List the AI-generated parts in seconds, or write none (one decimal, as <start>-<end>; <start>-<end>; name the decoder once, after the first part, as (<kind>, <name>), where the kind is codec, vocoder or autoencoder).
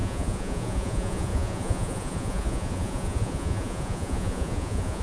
0.0-5.0 (vocoder, Vocos)